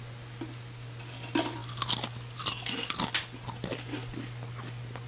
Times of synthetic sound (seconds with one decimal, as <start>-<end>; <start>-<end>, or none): none